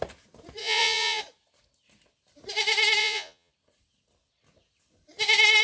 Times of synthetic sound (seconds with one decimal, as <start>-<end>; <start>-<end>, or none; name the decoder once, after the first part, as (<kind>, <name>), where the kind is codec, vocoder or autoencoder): 0.6-1.2 (vocoder, Vocos); 3.0-3.5